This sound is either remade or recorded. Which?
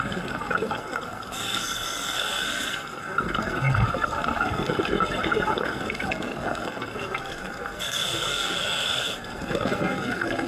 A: remade